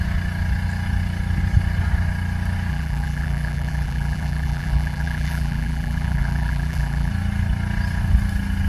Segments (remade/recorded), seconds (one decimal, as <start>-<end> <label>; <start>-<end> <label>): 0.0-2.7 recorded; 2.7-7.1 remade; 7.1-8.7 recorded